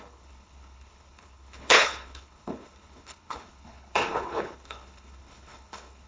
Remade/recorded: remade